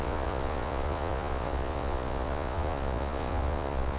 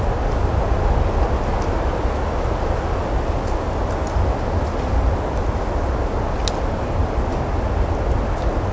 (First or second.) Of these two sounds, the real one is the second